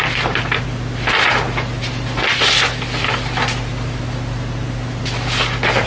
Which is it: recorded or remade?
recorded